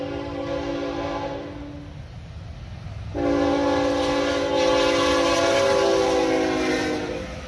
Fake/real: real